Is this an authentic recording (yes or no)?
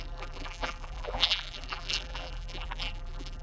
no